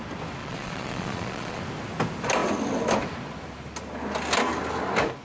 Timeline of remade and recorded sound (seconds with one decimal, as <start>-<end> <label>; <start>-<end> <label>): 0.0-0.4 recorded; 0.4-1.6 remade; 1.6-5.2 recorded